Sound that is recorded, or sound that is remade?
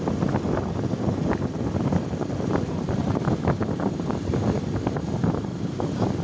recorded